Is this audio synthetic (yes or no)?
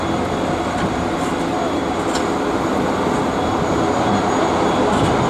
no